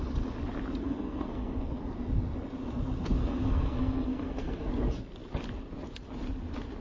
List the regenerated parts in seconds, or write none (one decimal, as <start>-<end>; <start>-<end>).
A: 0.8-1.6; 3.2-4.7